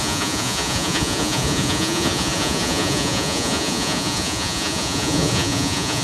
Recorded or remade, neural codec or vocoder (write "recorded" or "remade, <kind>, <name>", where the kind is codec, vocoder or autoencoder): remade, vocoder, Vocos